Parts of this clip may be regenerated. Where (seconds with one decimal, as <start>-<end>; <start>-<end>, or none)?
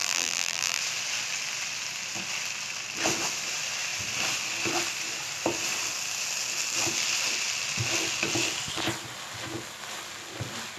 0.0-0.8